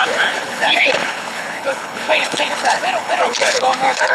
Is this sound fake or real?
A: fake